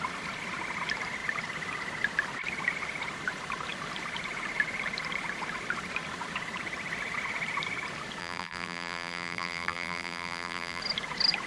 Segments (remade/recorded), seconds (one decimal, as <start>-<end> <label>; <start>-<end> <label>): 0.0-8.2 recorded; 8.2-10.8 remade; 10.8-11.5 recorded